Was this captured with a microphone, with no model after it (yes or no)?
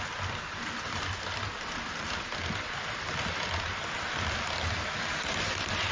yes